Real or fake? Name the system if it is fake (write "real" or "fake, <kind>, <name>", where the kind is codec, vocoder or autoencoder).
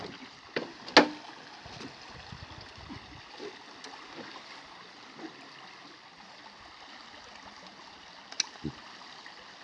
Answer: real